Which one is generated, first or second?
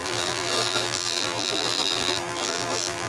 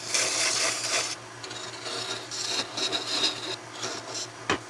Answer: first